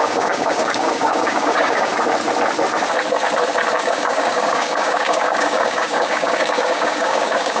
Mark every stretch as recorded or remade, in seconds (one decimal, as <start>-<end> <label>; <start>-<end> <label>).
0.0-1.9 remade; 1.9-3.7 recorded; 3.7-7.6 remade